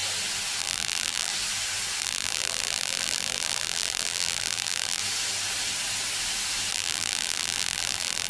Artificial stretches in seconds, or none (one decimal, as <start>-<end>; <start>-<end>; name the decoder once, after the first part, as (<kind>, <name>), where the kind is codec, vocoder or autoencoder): 0.6-1.3 (vocoder, BigVGAN v2); 2.0-5.0; 6.7-8.3